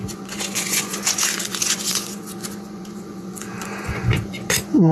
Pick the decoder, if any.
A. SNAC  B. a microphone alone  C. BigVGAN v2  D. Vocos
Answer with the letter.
D